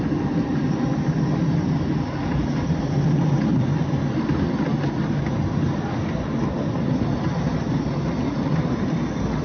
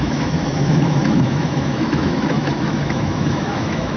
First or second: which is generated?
second